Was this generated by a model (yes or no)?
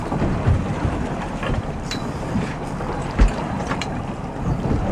yes